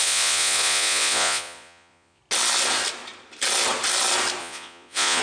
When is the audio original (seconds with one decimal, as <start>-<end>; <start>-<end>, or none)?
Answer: 2.2-4.4